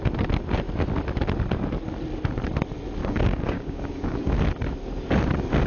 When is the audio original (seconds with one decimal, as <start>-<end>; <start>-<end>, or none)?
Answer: 0.0-3.0; 4.4-5.7